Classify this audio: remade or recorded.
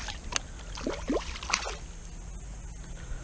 recorded